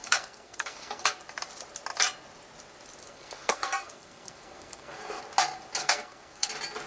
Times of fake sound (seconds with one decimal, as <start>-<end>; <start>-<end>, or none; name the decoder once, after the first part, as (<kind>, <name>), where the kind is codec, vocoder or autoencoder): 0.0-1.2 (codec, SNAC); 3.0-5.2; 5.8-6.5